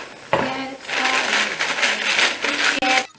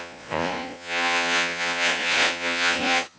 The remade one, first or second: second